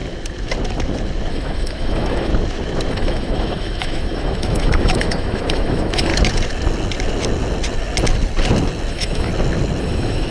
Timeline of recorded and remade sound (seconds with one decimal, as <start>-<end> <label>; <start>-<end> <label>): 0.0-1.3 recorded; 1.3-2.3 remade; 2.3-2.9 recorded; 2.9-6.1 remade; 6.1-8.9 recorded; 8.9-9.3 remade; 9.3-9.8 recorded; 9.8-10.3 remade